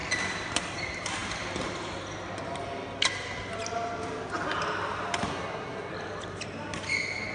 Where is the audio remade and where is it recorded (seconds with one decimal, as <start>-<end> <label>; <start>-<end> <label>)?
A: 0.0-5.3 recorded; 5.3-5.9 remade; 5.9-7.3 recorded